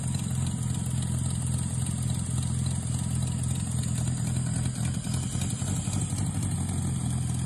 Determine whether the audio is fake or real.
real